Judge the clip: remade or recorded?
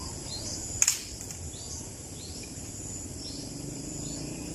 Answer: remade